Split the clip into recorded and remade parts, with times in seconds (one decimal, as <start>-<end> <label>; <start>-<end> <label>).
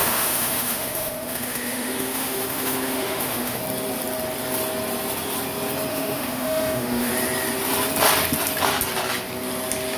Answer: 0.0-3.6 remade; 3.6-5.9 recorded; 5.9-7.1 remade; 7.1-10.0 recorded